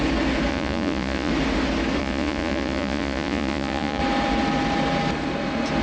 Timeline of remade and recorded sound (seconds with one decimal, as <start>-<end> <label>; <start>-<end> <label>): 0.0-0.5 recorded; 0.5-1.3 remade; 1.3-2.0 recorded; 2.0-4.0 remade; 4.0-5.8 recorded